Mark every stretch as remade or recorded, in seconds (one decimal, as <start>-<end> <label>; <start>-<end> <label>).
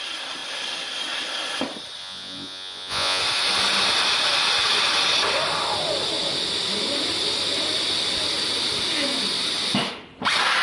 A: 0.0-2.0 recorded; 2.0-3.2 remade; 3.2-10.6 recorded